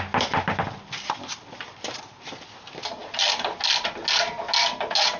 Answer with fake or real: real